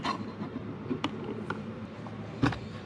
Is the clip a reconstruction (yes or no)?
yes